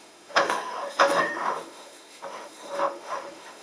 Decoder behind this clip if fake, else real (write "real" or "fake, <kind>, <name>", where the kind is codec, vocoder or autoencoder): fake, autoencoder, DAC-VAE